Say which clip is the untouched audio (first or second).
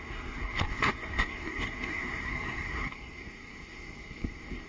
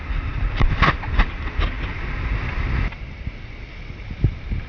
second